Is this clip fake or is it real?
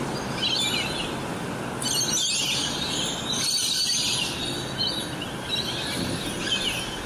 real